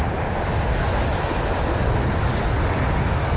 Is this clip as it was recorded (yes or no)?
yes